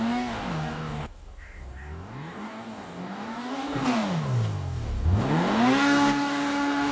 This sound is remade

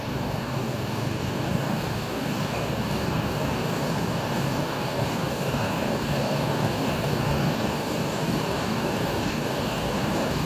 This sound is remade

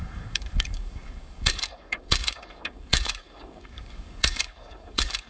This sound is remade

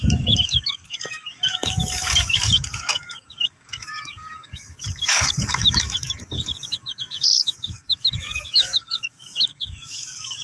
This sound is remade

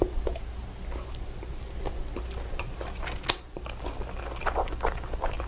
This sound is recorded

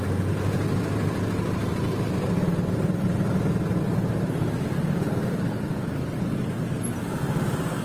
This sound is recorded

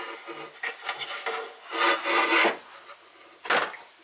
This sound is recorded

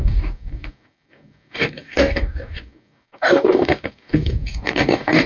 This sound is remade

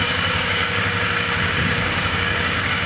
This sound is remade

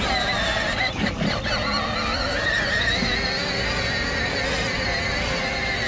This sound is recorded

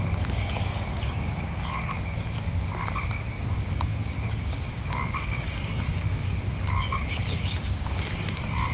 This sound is remade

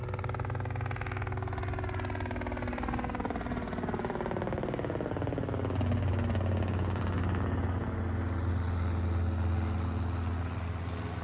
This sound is recorded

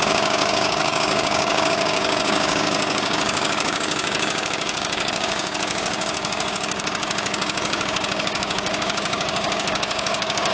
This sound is remade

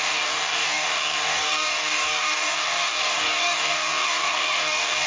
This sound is remade